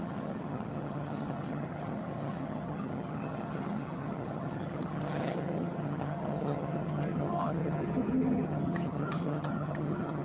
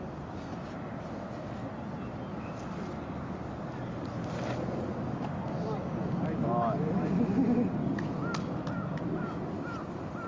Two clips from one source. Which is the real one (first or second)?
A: second